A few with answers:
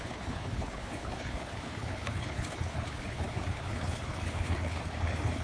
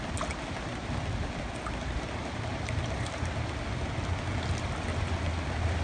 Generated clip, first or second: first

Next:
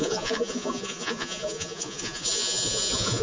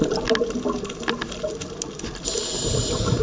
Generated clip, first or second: first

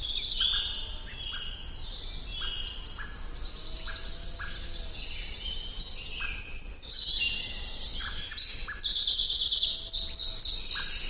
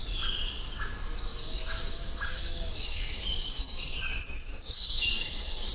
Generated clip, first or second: second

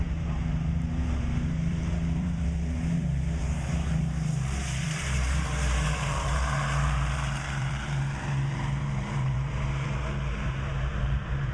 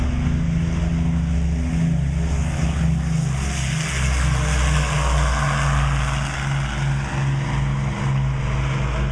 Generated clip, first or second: first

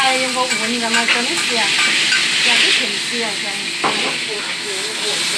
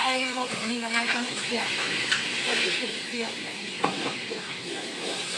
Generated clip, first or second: second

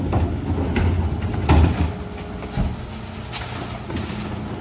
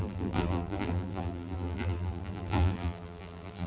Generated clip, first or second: second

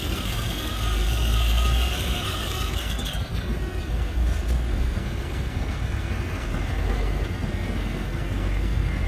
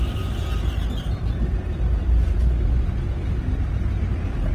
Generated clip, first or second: first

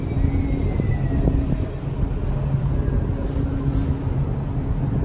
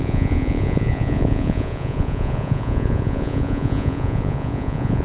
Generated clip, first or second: second